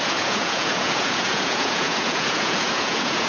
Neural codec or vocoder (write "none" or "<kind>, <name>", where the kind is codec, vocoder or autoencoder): vocoder, Vocos